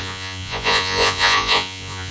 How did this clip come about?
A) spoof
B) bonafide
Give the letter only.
A